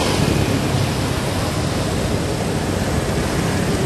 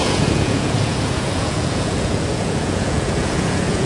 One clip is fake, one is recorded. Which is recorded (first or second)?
first